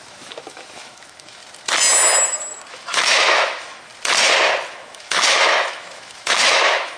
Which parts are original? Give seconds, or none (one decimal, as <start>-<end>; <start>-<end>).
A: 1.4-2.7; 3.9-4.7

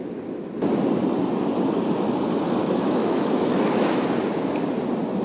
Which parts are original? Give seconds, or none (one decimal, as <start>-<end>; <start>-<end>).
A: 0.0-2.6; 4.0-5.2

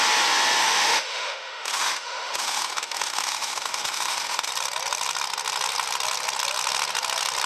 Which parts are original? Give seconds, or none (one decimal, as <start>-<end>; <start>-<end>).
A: 0.0-0.6; 4.5-7.5